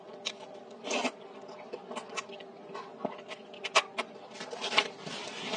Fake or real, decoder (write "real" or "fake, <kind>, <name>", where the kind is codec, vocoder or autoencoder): real